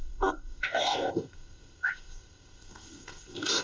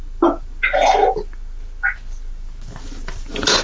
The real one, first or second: second